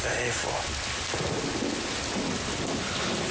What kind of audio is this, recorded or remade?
recorded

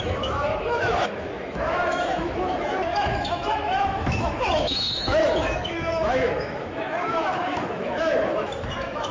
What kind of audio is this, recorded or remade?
remade